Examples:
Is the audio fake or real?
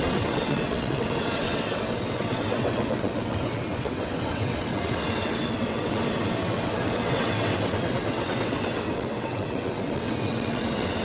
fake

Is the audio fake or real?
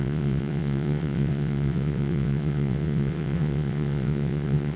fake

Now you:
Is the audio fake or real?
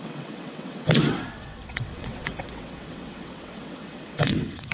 fake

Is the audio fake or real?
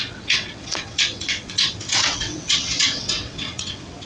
fake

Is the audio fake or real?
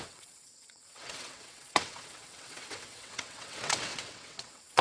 fake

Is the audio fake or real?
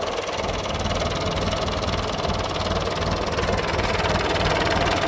real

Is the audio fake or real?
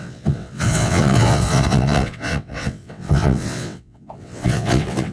fake